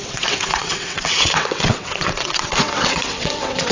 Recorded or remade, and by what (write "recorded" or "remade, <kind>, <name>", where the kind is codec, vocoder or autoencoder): remade, vocoder, WaveNeXt